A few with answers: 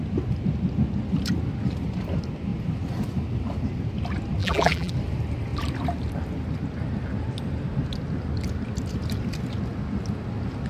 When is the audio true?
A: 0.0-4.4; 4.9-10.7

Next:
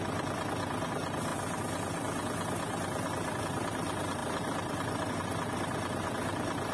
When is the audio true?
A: 0.0-4.2; 5.1-6.7

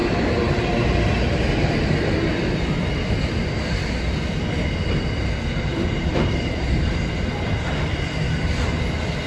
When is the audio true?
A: 1.9-5.7; 7.0-9.3

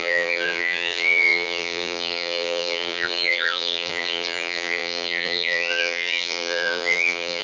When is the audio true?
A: none

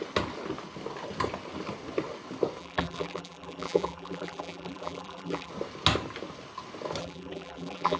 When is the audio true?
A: 0.0-2.6; 5.5-7.0